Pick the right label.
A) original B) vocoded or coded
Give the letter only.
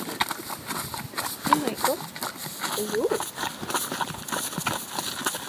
A